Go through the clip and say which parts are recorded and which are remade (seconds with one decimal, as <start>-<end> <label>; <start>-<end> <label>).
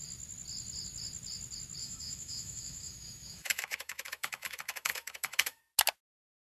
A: 0.0-1.8 recorded; 1.8-5.6 remade; 5.6-6.4 recorded